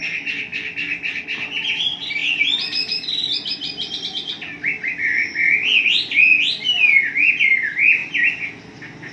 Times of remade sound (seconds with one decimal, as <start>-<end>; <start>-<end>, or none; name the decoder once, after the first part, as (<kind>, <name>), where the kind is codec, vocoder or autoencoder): none